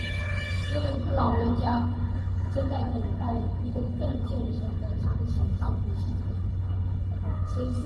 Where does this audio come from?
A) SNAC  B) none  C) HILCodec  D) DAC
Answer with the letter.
C